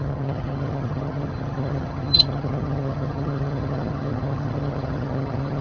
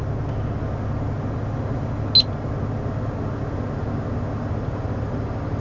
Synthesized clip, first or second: first